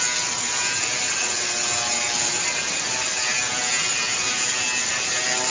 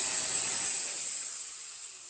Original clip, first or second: first